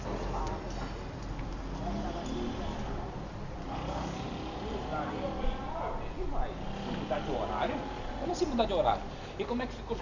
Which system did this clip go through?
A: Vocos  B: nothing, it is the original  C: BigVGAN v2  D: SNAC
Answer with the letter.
B